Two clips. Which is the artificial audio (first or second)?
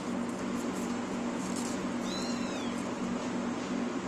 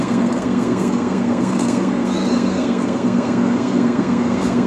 second